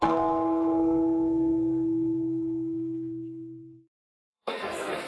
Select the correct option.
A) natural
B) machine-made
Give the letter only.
B